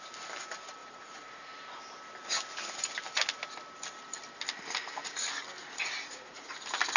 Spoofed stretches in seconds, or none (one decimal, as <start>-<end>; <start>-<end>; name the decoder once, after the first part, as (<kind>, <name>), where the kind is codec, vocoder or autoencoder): 0.8-1.5 (vocoder, Vocos); 5.6-6.5